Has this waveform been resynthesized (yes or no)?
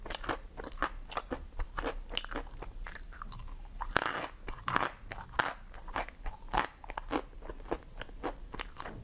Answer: no